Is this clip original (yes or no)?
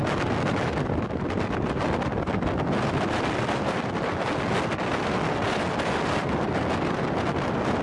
yes